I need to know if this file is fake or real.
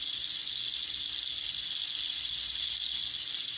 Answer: real